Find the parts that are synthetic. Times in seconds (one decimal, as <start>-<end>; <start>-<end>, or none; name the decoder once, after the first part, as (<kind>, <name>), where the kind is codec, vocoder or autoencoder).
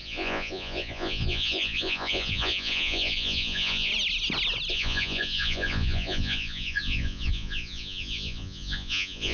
0.0-3.9 (vocoder, Vocos); 4.7-9.3